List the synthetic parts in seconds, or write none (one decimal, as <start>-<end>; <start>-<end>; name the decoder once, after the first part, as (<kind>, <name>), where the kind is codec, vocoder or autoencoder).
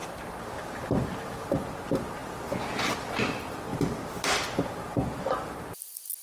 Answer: none